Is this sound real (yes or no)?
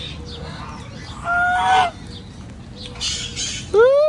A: yes